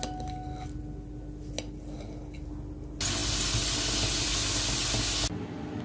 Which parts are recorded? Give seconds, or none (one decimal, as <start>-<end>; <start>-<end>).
0.0-5.8

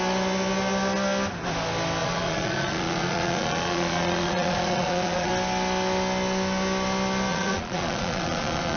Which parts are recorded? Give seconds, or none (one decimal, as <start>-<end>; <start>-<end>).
0.0-2.0; 5.3-7.3

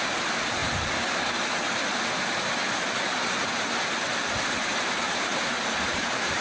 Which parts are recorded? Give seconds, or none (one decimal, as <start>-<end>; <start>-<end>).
0.6-4.4; 5.3-6.0

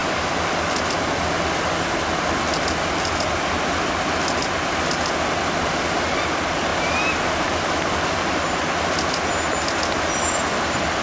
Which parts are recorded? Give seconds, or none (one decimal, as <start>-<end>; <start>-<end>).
0.0-11.0